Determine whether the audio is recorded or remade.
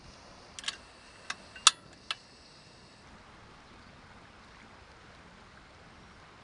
recorded